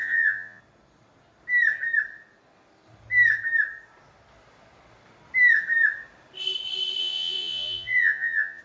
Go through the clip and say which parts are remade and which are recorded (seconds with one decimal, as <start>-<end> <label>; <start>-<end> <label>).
0.0-0.6 remade; 0.6-7.0 recorded; 7.0-8.6 remade

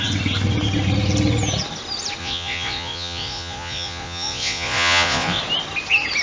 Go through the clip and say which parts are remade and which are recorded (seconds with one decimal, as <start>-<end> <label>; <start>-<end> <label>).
0.0-2.2 recorded; 2.2-5.4 remade; 5.4-6.2 recorded